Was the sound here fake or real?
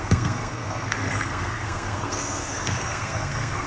fake